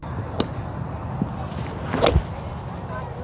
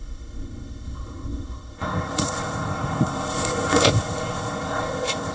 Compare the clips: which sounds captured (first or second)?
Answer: first